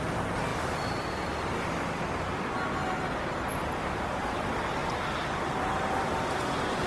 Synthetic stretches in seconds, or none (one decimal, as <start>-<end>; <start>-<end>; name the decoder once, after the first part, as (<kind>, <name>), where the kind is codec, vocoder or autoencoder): none